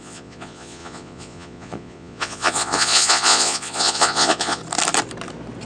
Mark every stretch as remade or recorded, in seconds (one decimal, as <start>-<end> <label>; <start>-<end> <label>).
0.0-4.6 remade; 4.6-5.7 recorded